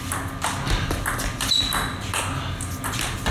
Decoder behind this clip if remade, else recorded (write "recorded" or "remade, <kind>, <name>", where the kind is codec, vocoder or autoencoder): recorded